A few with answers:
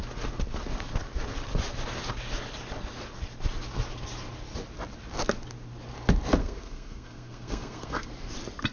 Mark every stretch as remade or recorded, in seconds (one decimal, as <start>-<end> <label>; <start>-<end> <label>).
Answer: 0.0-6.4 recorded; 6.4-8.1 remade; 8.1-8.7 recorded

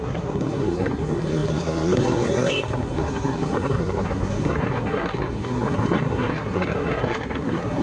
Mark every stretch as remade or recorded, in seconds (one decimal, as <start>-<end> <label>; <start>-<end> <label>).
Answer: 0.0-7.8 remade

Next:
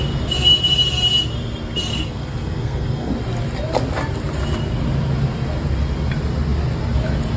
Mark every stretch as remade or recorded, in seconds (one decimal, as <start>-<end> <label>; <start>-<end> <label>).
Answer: 0.0-1.9 recorded; 1.9-3.1 remade; 3.1-7.4 recorded